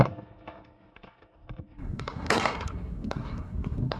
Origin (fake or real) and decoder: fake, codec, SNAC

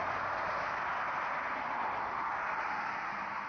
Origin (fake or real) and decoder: real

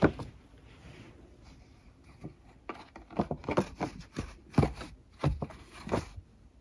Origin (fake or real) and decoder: real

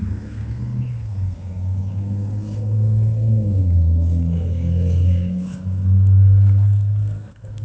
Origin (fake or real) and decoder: fake, codec, SNAC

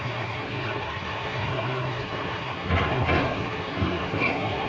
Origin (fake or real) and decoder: fake, codec, SNAC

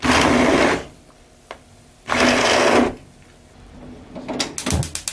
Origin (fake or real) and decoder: real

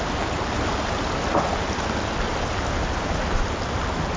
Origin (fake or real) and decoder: real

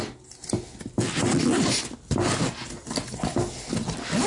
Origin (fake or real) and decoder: real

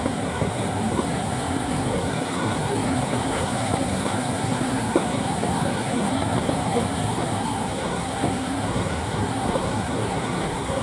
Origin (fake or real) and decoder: fake, codec, SNAC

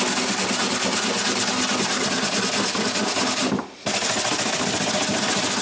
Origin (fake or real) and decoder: real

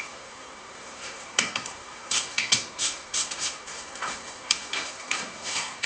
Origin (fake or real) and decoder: fake, codec, SNAC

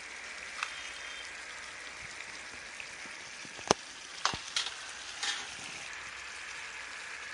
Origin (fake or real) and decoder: real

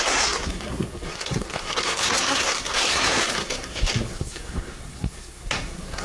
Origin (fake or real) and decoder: fake, codec, SNAC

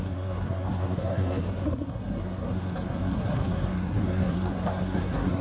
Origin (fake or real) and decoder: fake, codec, SNAC